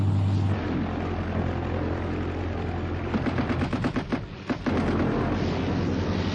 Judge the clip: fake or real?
real